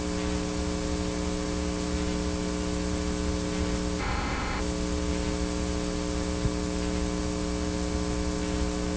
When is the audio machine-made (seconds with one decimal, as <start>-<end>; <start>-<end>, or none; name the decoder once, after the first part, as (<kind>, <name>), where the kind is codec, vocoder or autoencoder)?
4.0-4.6 (codec, ZipCodec)